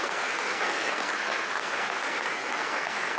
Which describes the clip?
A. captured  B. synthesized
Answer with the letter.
B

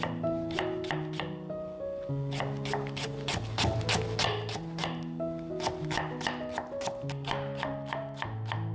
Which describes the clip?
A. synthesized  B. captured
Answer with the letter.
B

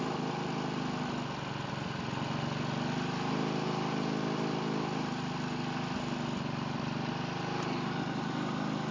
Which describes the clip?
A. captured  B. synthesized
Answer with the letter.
A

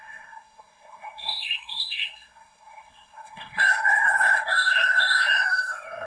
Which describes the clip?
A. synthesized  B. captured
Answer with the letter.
A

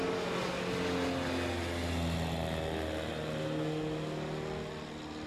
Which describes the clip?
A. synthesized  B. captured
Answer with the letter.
B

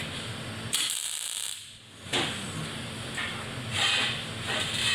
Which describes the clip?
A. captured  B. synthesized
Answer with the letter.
A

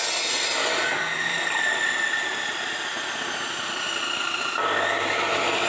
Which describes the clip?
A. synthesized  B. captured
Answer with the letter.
B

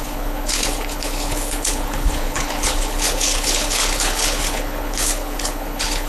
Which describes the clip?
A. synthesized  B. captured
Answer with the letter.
A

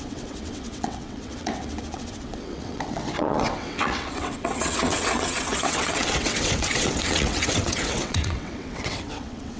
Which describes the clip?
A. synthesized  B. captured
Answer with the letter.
A